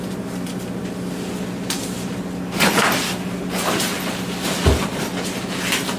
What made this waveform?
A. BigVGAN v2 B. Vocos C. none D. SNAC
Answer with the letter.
C